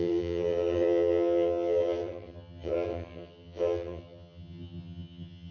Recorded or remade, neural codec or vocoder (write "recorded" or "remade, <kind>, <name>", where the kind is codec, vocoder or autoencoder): remade, vocoder, HiFi-GAN